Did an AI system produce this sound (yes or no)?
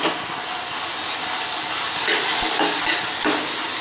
no